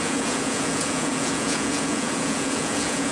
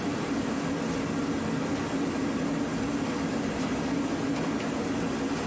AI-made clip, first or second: first